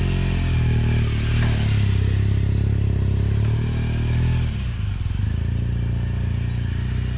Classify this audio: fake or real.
real